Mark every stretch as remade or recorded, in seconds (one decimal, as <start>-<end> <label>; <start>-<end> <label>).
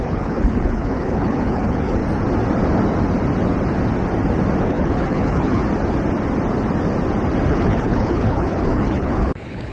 0.0-2.0 remade; 2.0-4.6 recorded; 4.6-5.6 remade; 5.6-7.5 recorded; 7.5-9.7 remade